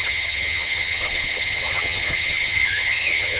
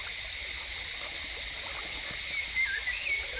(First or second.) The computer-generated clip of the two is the first